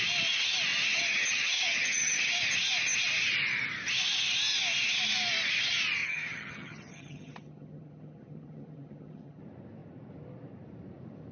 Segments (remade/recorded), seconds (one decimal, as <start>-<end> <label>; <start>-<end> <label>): 0.0-0.9 recorded; 0.9-2.3 remade; 2.3-6.0 recorded; 6.0-9.4 remade; 9.4-11.3 recorded

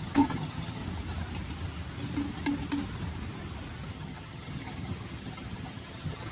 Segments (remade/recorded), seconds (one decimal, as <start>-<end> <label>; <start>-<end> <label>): 0.0-0.8 remade; 0.8-3.9 recorded; 3.9-6.3 remade

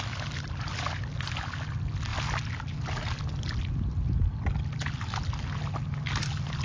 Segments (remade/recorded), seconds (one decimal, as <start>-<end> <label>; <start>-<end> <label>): 0.0-6.6 recorded

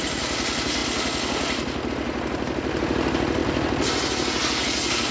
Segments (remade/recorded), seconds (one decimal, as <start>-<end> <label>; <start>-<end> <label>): 0.0-5.1 recorded

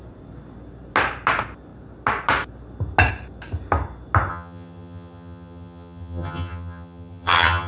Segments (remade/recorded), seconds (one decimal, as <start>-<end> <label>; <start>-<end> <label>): 0.0-4.3 recorded; 4.3-7.7 remade